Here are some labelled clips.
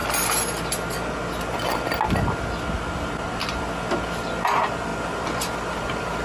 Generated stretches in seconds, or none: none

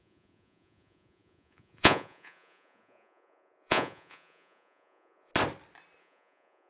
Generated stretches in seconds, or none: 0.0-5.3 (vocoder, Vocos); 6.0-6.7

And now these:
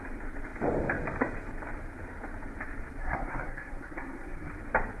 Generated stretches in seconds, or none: 3.0-4.5 (codec, SNAC)